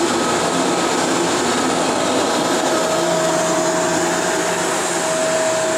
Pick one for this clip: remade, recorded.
recorded